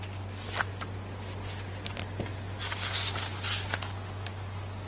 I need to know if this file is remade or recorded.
recorded